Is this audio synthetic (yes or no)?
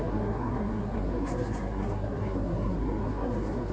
yes